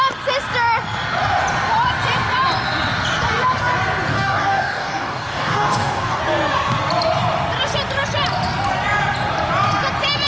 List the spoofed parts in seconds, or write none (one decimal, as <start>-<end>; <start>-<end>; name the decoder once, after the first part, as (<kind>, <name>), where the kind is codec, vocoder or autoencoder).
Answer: 4.1-6.2 (codec, DAC)